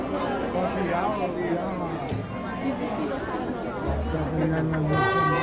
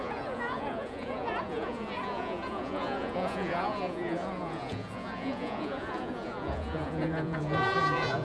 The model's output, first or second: second